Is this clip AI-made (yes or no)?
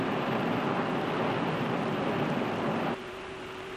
no